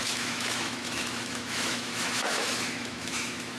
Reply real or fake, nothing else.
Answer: fake